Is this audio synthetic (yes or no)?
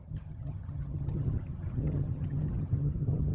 yes